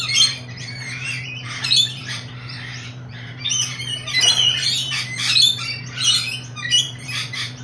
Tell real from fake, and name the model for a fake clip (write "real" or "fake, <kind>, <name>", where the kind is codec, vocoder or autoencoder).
fake, vocoder, BigVGAN v2